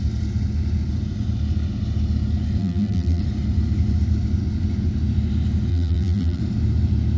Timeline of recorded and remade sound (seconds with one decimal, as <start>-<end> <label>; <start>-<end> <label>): 0.0-2.6 recorded; 2.6-3.2 remade; 3.2-5.7 recorded; 5.7-6.4 remade; 6.4-7.2 recorded